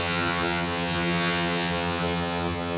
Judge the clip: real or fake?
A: fake